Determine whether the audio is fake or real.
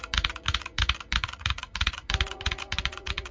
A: fake